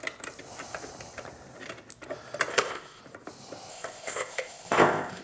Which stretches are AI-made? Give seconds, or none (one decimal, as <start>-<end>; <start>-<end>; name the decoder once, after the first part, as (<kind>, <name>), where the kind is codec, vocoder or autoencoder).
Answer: 2.5-3.0 (codec, ZipCodec); 3.7-5.2